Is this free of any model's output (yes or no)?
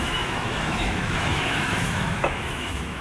no